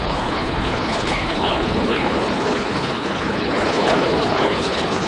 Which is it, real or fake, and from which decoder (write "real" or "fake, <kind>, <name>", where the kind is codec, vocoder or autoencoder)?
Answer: fake, codec, HILCodec